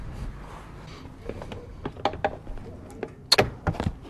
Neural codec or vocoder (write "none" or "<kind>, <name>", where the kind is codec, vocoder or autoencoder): none